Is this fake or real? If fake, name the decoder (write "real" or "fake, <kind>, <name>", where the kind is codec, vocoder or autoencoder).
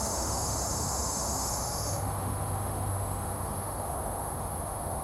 fake, autoencoder, DAC-VAE